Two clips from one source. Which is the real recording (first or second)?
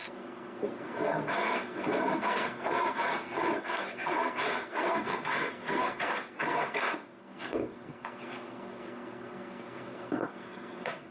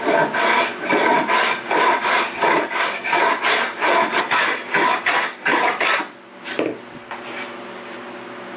second